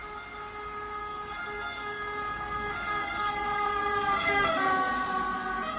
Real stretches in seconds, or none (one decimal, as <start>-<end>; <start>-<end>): 0.0-1.0; 4.5-5.8